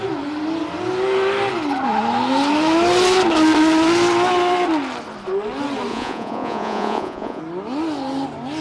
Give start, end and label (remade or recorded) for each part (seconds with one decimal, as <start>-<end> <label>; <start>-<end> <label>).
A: 0.0-5.9 recorded; 5.9-7.4 remade; 7.4-8.6 recorded